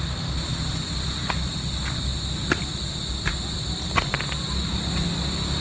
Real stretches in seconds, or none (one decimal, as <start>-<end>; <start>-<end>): 0.0-5.6